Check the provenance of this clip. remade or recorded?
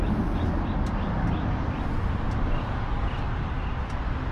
recorded